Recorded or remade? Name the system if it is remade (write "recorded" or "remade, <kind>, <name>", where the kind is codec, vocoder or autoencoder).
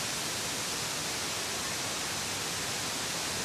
recorded